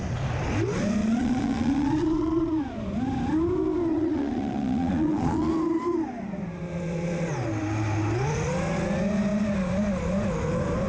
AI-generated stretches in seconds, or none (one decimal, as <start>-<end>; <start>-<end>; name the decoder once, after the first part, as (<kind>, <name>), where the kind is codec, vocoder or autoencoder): 1.0-2.5 (vocoder, Vocos); 3.9-5.5